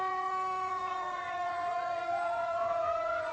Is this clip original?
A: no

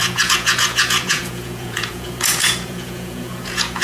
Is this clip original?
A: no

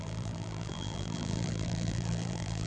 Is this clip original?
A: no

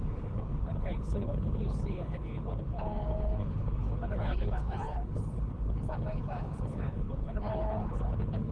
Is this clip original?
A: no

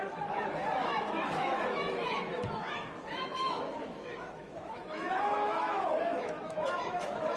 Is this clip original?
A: no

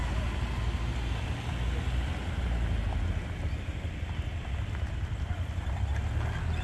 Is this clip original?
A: yes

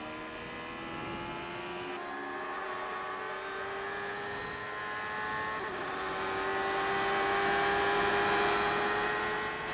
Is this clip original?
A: yes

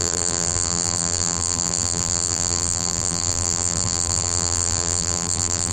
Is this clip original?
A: no